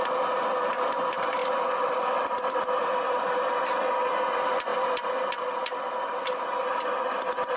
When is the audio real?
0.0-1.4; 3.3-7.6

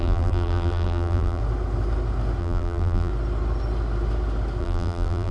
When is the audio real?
1.4-2.4; 3.1-4.6

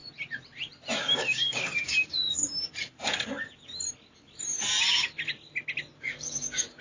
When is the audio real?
0.0-1.0; 2.4-6.0